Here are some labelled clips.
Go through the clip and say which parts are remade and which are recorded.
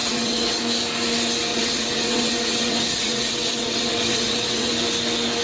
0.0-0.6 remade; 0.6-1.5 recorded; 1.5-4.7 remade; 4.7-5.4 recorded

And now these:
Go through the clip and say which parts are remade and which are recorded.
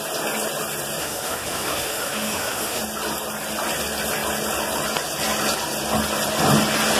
0.0-1.0 recorded; 1.0-2.8 remade; 2.8-7.0 recorded